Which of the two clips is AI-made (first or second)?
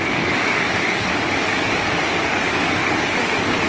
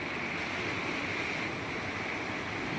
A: first